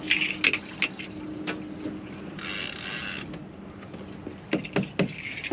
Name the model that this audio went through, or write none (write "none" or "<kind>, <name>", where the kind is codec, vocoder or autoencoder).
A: none